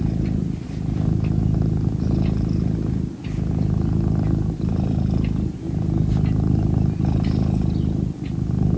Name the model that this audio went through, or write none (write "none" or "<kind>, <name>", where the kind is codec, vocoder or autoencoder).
none